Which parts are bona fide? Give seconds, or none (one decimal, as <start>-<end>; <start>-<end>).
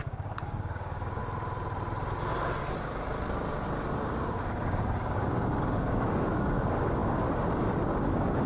1.2-4.0